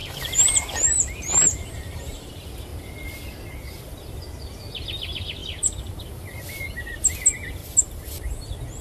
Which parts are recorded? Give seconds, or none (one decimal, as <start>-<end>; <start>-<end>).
2.3-7.6; 8.3-8.8